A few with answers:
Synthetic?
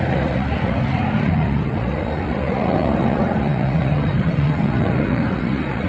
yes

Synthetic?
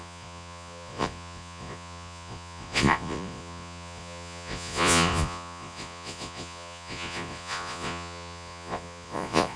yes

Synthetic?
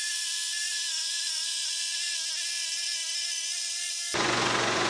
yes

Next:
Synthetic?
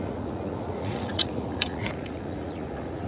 yes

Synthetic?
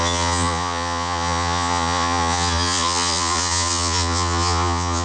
yes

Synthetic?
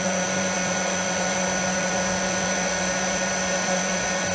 yes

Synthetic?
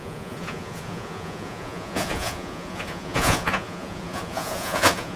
yes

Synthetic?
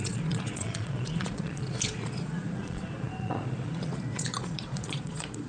yes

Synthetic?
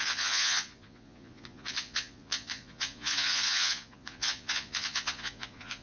yes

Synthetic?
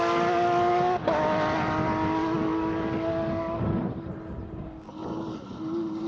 no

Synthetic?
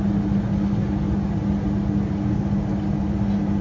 no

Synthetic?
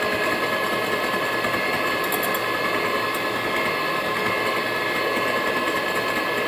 no